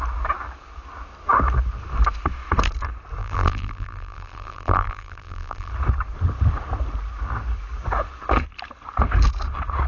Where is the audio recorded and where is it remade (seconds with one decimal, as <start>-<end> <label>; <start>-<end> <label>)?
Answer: 0.0-3.2 recorded; 3.2-5.7 remade; 5.7-9.9 recorded